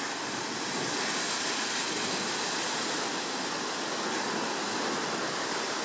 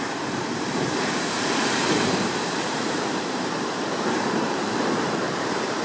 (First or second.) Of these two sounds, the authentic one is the first